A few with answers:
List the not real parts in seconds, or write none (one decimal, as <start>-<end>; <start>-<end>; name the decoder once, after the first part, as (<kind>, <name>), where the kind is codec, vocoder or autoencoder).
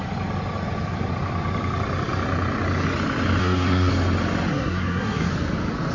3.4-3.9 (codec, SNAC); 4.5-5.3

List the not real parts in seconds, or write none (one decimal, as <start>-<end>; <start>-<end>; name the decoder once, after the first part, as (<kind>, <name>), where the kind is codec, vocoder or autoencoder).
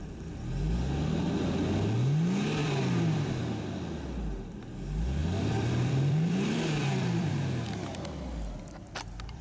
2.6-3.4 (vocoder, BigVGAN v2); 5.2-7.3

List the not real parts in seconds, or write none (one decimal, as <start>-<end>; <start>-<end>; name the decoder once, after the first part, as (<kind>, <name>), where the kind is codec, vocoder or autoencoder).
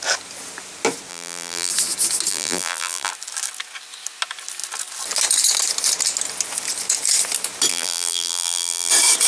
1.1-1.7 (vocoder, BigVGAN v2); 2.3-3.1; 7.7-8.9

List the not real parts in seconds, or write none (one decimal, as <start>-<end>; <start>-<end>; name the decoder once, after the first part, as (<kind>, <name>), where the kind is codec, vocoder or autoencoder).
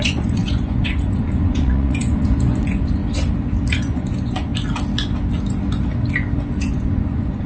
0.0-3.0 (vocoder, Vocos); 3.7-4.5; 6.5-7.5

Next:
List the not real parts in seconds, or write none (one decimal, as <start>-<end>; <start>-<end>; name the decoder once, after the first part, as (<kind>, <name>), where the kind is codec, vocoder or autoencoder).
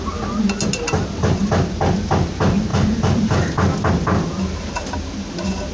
none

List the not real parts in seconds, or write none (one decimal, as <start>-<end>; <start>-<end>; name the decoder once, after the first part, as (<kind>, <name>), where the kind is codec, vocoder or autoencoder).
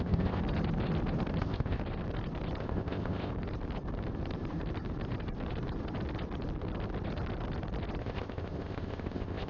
0.0-0.4 (codec, ZipCodec); 1.4-1.8; 2.6-3.3; 8.0-9.5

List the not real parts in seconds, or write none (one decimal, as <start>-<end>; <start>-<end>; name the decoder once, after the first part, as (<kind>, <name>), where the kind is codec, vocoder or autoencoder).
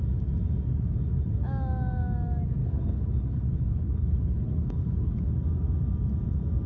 2.6-5.3 (codec, HILCodec)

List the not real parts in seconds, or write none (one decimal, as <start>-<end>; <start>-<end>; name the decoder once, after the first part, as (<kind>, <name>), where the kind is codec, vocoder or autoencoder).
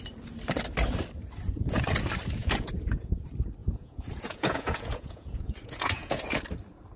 2.4-3.1 (vocoder, Vocos); 3.6-6.2